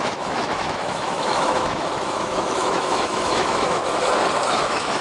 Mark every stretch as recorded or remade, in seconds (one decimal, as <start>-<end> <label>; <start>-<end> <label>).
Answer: 0.0-3.8 remade; 3.8-4.5 recorded; 4.5-5.0 remade